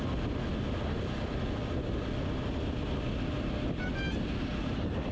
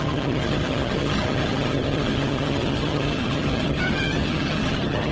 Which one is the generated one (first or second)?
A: second